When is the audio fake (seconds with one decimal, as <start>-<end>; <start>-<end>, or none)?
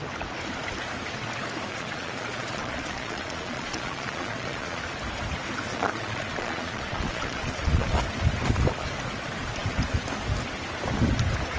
1.7-4.8; 5.7-8.0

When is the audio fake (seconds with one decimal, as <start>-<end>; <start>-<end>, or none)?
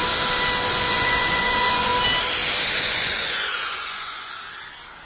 0.7-1.9; 2.8-4.3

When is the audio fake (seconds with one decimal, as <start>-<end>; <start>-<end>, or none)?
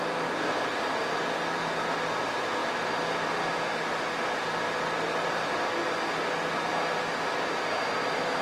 none